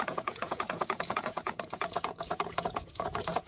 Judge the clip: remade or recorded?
remade